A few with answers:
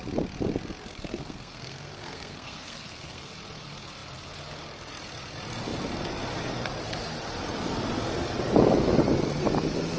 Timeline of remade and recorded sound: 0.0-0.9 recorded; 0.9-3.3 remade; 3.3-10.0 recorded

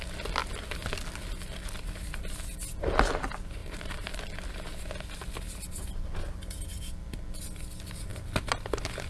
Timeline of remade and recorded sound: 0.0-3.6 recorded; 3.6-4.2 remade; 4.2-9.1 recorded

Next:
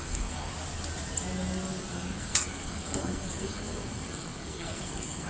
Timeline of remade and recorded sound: 0.0-0.5 remade; 0.5-1.9 recorded; 1.9-5.3 remade

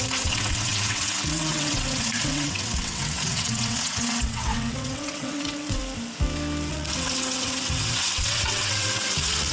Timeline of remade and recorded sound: 0.0-5.8 remade; 5.8-6.7 recorded; 6.7-9.5 remade

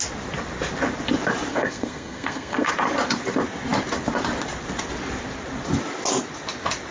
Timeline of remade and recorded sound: 0.0-1.5 recorded; 1.5-2.7 remade; 2.7-6.9 recorded

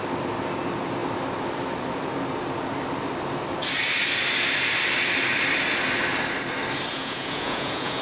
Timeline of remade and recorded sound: 0.0-6.9 recorded; 6.9-8.0 remade

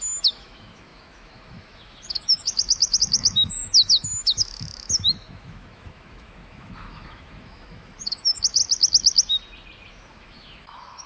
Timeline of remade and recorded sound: 0.0-8.6 remade; 8.6-9.9 recorded; 9.9-11.1 remade

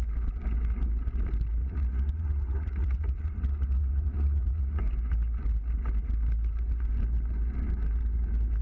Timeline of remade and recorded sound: 0.0-1.6 recorded; 1.6-4.8 remade; 4.8-8.6 recorded